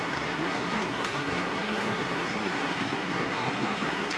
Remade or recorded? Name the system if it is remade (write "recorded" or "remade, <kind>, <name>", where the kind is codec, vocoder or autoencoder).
remade, codec, SNAC